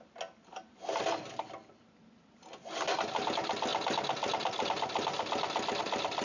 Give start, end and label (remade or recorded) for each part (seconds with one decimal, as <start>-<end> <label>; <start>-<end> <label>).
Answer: 0.0-6.2 recorded